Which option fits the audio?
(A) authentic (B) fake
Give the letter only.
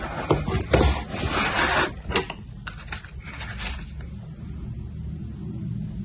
A